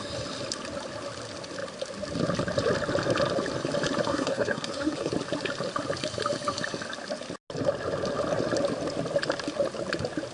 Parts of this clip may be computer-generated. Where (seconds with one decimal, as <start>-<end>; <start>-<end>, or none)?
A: 4.1-5.1